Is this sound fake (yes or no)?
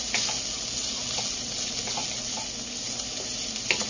no